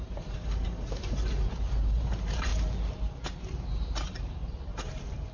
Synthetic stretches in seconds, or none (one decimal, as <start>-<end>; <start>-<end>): 0.0-2.5; 3.4-5.3